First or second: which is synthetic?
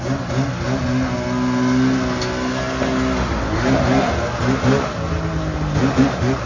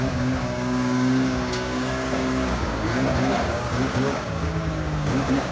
second